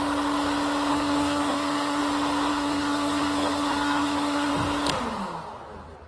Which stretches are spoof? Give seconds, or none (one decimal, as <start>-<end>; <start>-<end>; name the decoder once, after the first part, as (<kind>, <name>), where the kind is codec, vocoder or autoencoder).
0.9-2.0 (codec, SNAC); 2.5-4.5